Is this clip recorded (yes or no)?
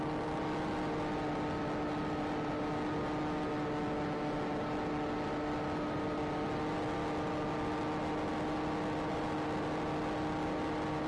yes